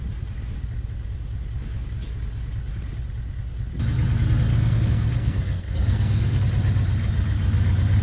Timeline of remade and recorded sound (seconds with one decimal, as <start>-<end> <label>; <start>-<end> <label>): 0.0-4.5 recorded; 4.5-6.4 remade; 6.4-8.0 recorded